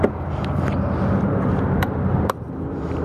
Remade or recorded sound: remade